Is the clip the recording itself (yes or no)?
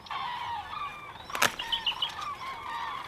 yes